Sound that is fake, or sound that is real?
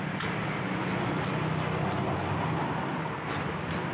real